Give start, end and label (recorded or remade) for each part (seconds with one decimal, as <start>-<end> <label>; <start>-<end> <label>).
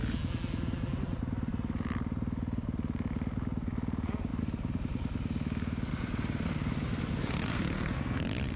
0.0-8.6 recorded